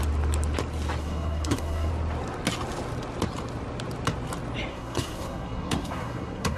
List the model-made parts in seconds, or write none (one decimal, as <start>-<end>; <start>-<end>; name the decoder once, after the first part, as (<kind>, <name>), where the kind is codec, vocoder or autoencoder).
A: 1.0-1.9 (codec, SNAC); 4.7-6.6